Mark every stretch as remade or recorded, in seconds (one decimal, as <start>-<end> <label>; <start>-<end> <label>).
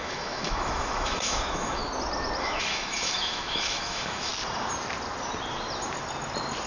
0.0-1.8 remade; 1.8-2.4 recorded; 2.4-4.3 remade; 4.3-6.7 recorded